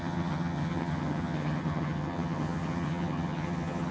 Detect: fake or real fake